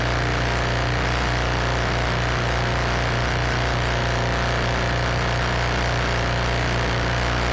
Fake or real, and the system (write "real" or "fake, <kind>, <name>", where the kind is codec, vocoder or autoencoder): real